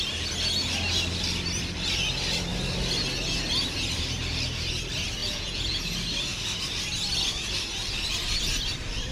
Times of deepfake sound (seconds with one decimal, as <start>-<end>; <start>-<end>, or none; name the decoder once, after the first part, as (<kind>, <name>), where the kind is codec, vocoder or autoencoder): 5.2-5.8 (vocoder, Vocos)